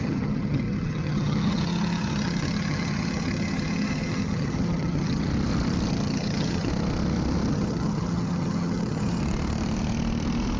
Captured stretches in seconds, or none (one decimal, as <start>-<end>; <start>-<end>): 5.2-5.9; 6.7-7.5; 9.2-10.6